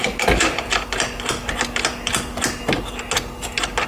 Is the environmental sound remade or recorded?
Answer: recorded